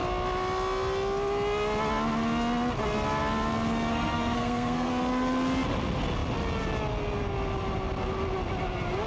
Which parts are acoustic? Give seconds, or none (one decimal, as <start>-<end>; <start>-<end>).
0.0-3.9; 4.9-9.1